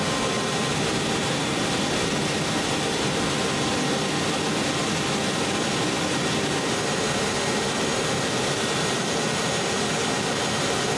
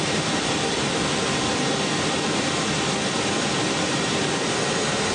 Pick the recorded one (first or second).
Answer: first